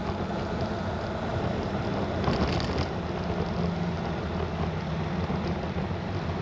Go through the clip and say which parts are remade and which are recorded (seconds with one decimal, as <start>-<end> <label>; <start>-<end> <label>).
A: 0.0-6.4 recorded